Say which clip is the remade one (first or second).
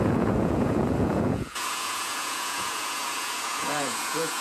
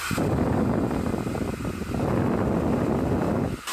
first